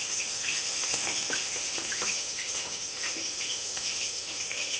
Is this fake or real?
fake